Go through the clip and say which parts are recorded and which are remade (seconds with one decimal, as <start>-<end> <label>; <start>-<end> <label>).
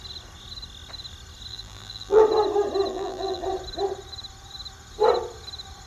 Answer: 0.0-1.5 recorded; 1.5-2.2 remade; 2.2-2.9 recorded; 2.9-3.4 remade; 3.4-5.9 recorded